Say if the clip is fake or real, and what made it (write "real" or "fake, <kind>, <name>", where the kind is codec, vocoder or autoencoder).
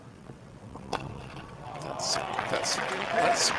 fake, vocoder, WaveNeXt